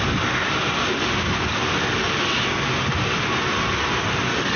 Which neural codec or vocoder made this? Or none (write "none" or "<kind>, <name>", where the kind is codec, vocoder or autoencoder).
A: none